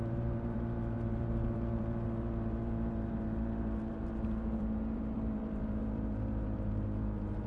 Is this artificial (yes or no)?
yes